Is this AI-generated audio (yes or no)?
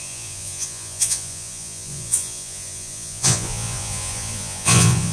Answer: yes